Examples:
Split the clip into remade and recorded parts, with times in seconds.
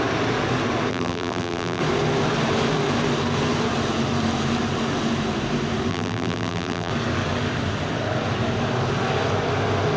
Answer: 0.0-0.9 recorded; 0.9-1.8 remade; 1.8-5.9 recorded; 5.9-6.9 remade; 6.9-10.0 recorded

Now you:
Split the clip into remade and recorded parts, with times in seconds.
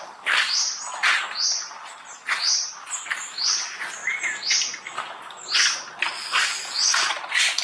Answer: 0.0-7.6 recorded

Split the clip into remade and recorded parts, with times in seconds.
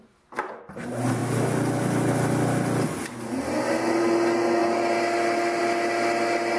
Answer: 0.0-6.6 recorded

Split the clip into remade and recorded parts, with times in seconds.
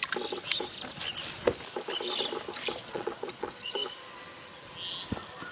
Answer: 0.0-2.7 recorded; 2.7-3.8 remade; 3.8-5.5 recorded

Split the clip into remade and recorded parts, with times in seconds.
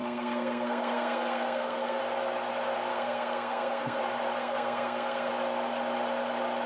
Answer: 0.0-2.0 remade; 2.0-2.9 recorded; 2.9-4.0 remade; 4.0-4.4 recorded; 4.4-5.3 remade; 5.3-6.7 recorded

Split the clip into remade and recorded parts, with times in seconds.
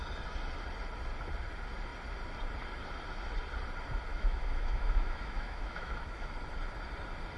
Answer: 0.0-4.1 recorded; 4.1-6.3 remade; 6.3-7.4 recorded